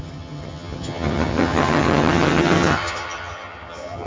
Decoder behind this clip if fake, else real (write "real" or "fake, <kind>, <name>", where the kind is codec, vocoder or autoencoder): fake, vocoder, HiFi-GAN